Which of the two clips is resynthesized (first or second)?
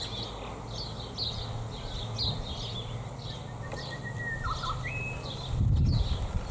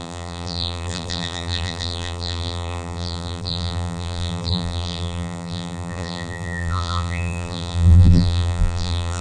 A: second